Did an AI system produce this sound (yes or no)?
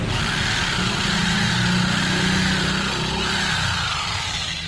no